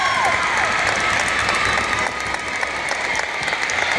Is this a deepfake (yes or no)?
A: no